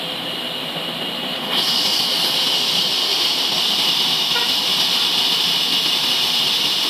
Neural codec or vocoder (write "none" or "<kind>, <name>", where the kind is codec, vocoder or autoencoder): none